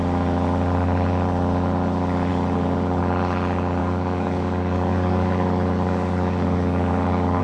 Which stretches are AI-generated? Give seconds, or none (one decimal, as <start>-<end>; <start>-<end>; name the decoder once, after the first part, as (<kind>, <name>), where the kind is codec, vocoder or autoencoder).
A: 3.8-7.4 (codec, DAC)

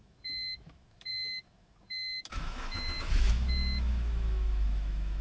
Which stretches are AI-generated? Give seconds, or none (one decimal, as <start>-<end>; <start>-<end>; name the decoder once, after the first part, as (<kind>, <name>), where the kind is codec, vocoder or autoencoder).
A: 0.0-5.2 (autoencoder, DAC-VAE)